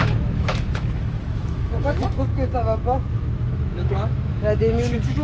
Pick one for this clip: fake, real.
fake